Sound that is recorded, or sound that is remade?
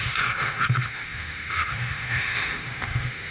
remade